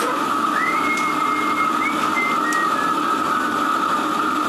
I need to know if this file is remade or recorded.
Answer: recorded